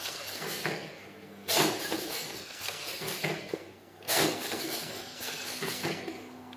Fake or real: fake